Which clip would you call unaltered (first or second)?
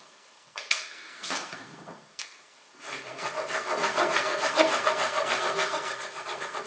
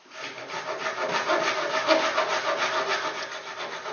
second